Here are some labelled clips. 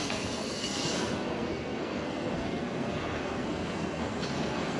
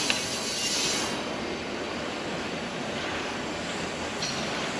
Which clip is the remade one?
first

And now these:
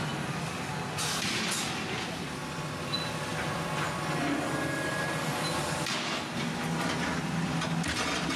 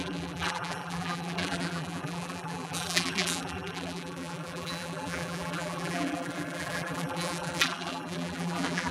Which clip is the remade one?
second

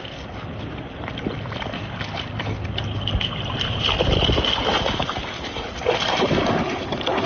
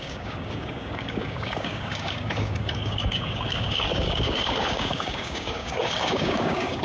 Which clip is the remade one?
second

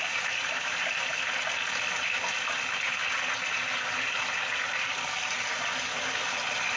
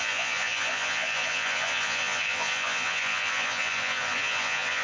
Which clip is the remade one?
second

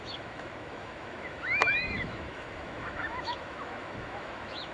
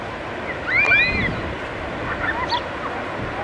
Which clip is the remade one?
first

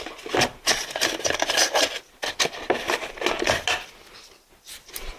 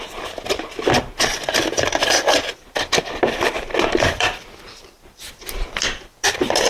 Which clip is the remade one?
second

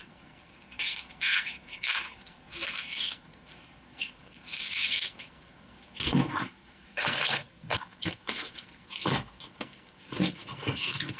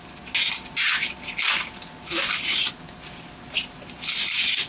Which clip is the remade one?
first